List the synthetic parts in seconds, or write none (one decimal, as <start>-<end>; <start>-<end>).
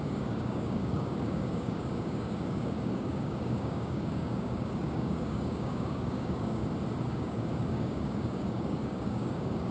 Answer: 0.0-6.6; 7.1-9.7